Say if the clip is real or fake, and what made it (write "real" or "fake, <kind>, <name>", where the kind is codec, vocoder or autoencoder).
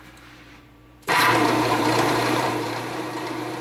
fake, vocoder, BigVGAN v2